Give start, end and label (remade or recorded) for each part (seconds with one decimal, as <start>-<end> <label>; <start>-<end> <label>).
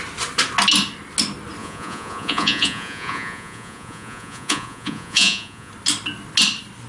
0.0-1.6 recorded; 1.6-5.7 remade; 5.7-6.9 recorded